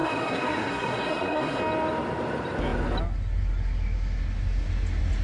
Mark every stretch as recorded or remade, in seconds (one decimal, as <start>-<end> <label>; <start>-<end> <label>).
0.0-1.6 remade; 1.6-5.2 recorded

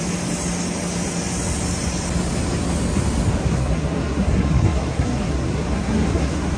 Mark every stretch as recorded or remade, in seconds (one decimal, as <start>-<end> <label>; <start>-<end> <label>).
0.0-3.4 recorded; 3.4-6.6 remade

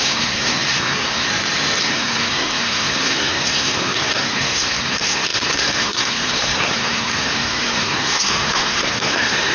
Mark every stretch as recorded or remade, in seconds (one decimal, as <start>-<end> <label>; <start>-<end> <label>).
0.0-1.3 remade; 1.3-1.8 recorded; 1.8-9.5 remade

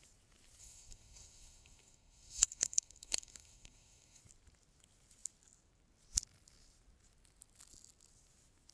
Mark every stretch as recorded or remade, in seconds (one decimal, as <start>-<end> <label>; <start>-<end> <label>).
0.0-0.6 recorded; 0.6-4.2 remade; 4.2-8.7 recorded

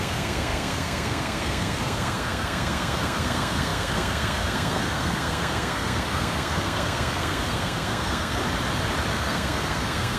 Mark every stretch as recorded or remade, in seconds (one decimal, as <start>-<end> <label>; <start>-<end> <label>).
0.0-8.4 remade; 8.4-9.1 recorded; 9.1-10.2 remade

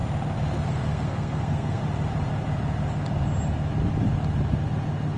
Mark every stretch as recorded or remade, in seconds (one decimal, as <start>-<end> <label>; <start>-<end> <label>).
0.0-0.6 recorded; 0.6-1.8 remade; 1.8-5.2 recorded

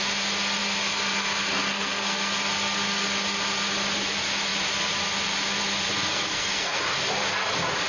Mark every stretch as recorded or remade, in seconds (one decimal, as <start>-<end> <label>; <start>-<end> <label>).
0.0-1.7 recorded; 1.7-2.3 remade; 2.3-6.1 recorded; 6.1-6.8 remade; 6.8-7.9 recorded

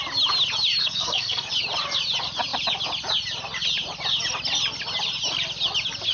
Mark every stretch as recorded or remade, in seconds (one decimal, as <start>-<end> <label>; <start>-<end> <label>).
0.0-0.8 recorded; 0.8-1.5 remade; 1.5-6.1 recorded